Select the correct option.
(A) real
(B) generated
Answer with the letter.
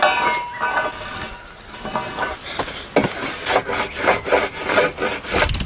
A